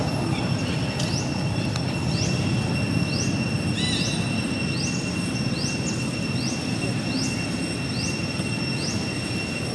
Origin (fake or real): real